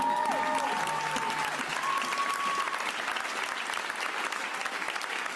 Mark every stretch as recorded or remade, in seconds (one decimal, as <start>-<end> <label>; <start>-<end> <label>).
0.0-5.4 recorded